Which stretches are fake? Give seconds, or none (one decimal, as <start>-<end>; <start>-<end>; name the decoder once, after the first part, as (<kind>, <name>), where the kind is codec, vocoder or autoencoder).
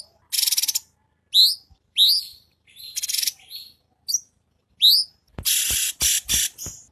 none